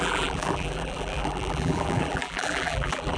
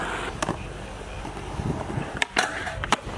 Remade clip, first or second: first